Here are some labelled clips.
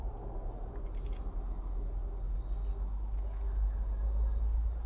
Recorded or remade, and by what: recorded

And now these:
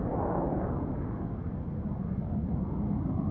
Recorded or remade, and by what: recorded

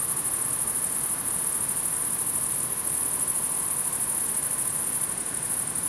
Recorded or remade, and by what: recorded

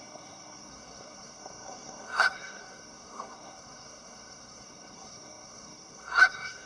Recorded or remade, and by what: remade, codec, SNAC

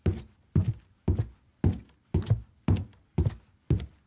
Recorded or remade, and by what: recorded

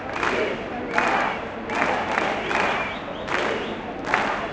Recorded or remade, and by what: recorded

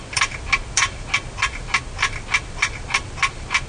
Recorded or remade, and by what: recorded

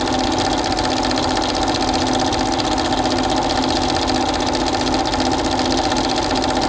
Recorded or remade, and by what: recorded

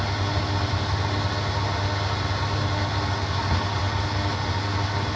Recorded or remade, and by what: recorded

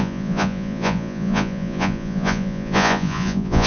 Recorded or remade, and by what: remade, vocoder, Vocos